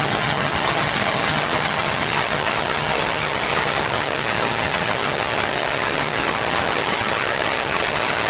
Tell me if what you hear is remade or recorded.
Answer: remade